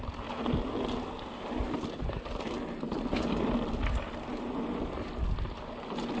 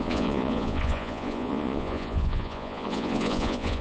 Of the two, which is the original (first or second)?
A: first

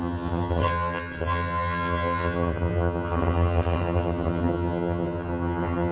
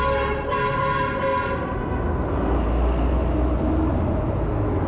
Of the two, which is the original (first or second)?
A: second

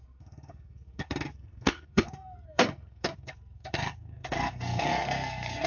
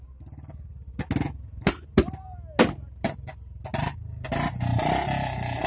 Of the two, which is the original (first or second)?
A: second